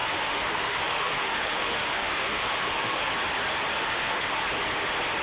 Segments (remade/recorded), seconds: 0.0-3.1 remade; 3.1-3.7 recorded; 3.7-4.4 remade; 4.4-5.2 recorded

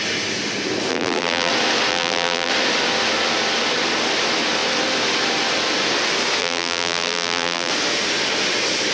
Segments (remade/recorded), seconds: 0.0-0.9 recorded; 0.9-1.5 remade; 1.5-1.9 recorded; 1.9-2.5 remade; 2.5-6.4 recorded; 6.4-7.7 remade; 7.7-8.9 recorded

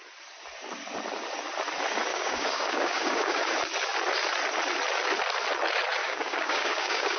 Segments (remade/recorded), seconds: 0.0-2.1 recorded; 2.1-3.4 remade; 3.4-6.0 recorded; 6.0-7.2 remade